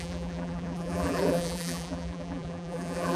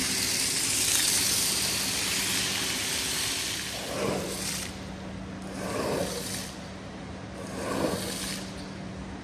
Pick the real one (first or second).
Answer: second